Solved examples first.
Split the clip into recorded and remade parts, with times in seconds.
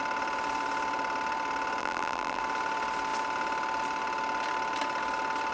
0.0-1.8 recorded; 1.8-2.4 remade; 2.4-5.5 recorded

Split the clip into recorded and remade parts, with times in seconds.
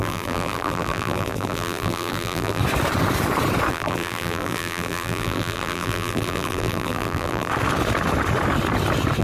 0.0-2.6 remade; 2.6-3.7 recorded; 3.7-7.5 remade; 7.5-9.2 recorded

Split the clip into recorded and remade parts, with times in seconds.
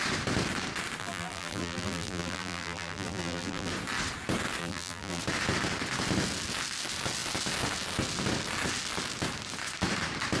0.0-1.0 recorded; 1.0-3.7 remade; 3.7-4.6 recorded; 4.6-5.2 remade; 5.2-10.4 recorded